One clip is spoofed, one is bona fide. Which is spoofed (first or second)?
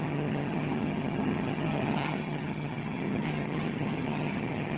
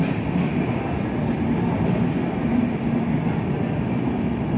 first